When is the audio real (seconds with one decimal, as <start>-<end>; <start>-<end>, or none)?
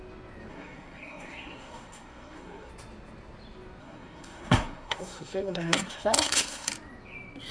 0.0-0.5; 2.7-3.8; 6.7-7.5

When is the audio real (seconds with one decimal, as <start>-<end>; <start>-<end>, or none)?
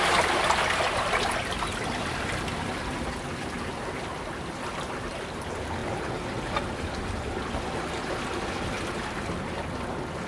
0.0-10.3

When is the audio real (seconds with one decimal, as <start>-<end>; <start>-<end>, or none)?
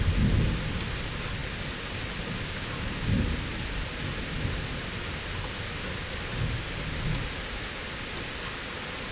0.0-9.1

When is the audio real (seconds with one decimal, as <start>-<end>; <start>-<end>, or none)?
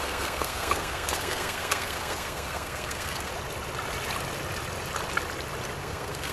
3.3-5.8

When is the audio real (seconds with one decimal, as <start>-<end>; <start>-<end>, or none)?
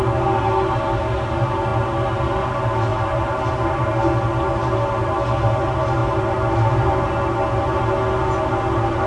0.0-9.1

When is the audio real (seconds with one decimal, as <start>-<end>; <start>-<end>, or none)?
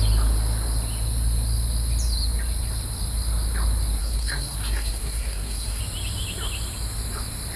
0.0-4.0; 5.8-7.6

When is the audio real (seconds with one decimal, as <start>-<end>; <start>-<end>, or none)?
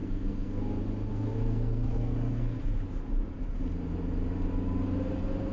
0.6-1.1; 2.6-5.5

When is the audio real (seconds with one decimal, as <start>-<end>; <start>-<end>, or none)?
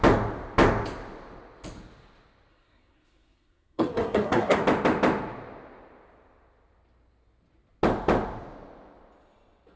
0.0-2.5; 4.6-9.8